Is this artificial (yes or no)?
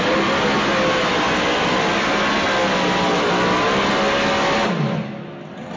no